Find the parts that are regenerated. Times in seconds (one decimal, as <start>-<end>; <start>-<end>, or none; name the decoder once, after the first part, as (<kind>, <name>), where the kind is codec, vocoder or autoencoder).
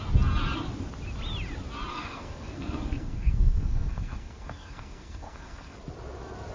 1.9-5.8 (codec, SNAC)